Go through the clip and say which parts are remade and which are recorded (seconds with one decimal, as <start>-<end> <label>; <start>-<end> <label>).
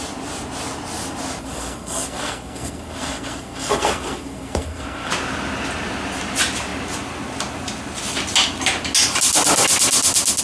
0.0-1.4 recorded; 1.4-5.1 remade; 5.1-10.4 recorded